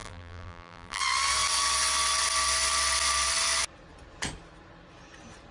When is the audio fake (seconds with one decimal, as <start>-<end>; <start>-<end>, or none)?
0.0-1.0